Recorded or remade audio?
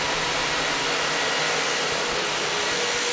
recorded